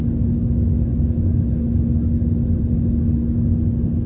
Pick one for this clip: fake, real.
real